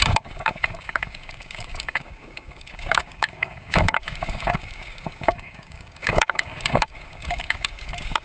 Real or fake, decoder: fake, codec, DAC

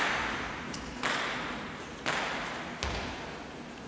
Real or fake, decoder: real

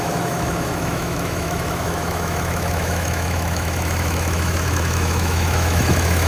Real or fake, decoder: fake, autoencoder, DAC-VAE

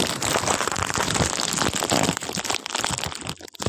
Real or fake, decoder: fake, vocoder, BigVGAN v2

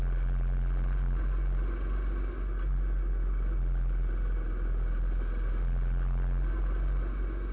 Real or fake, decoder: real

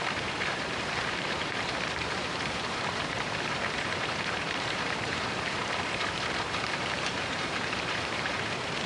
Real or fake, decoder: fake, vocoder, BigVGAN v2